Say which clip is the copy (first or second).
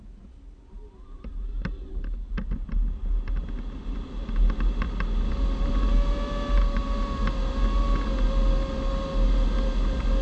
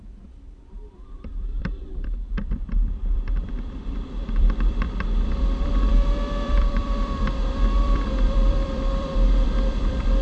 second